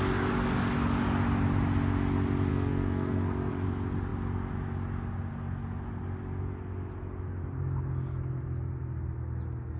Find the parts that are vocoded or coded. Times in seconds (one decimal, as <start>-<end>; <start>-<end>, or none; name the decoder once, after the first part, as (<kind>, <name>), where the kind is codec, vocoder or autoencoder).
2.5-3.5 (codec, SNAC)